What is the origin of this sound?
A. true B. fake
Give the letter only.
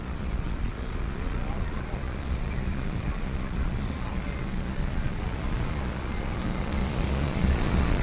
B